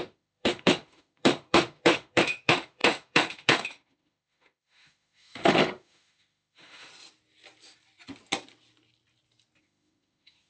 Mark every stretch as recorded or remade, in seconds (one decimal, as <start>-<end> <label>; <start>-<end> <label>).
0.0-6.9 remade; 6.9-9.6 recorded; 9.6-10.5 remade